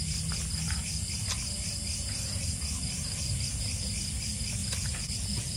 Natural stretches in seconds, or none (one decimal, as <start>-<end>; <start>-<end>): 0.0-4.6